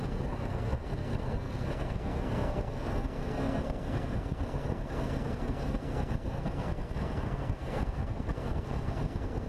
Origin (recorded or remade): remade